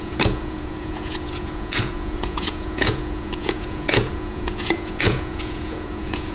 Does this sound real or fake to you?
fake